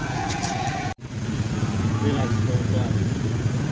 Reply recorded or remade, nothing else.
recorded